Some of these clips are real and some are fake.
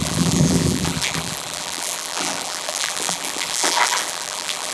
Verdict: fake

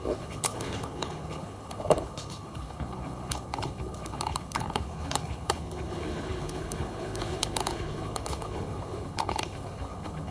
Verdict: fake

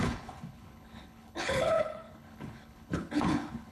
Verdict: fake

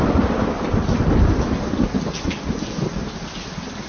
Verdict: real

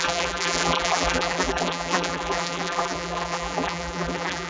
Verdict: fake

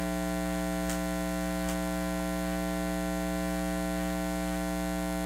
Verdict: real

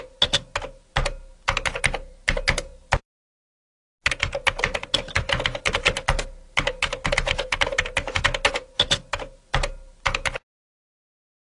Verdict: real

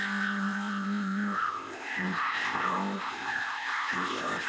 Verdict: fake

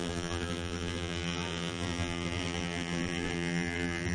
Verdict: fake